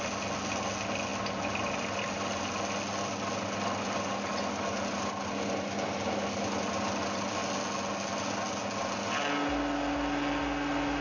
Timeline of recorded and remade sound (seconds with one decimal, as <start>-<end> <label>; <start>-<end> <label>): 0.0-11.0 recorded

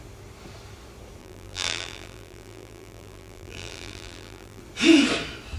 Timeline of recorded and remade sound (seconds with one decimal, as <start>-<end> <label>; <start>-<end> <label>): 0.0-1.2 recorded; 1.2-4.6 remade; 4.6-5.6 recorded

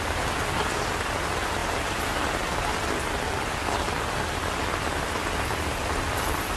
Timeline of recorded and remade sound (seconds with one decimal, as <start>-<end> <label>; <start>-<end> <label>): 0.0-6.6 recorded

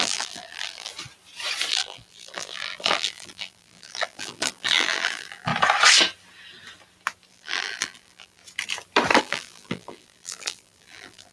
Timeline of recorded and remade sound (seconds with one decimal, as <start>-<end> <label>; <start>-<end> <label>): 0.0-0.9 remade; 0.9-1.7 recorded; 1.7-5.5 remade; 5.5-7.3 recorded; 7.3-8.4 remade; 8.4-9.2 recorded; 9.2-11.3 remade